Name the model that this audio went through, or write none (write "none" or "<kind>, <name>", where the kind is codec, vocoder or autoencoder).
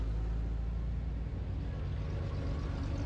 none